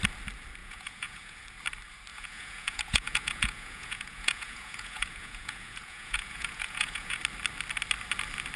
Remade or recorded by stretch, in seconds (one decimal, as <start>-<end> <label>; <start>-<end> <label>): 0.0-0.6 recorded; 0.6-1.4 remade; 1.4-2.1 recorded; 2.1-7.2 remade; 7.2-8.6 recorded